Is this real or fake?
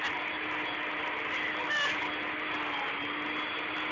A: real